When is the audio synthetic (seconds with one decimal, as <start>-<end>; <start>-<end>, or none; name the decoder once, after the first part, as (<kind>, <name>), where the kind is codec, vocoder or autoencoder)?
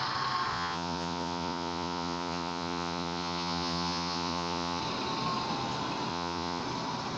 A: 0.5-4.8 (vocoder, Vocos); 6.1-6.6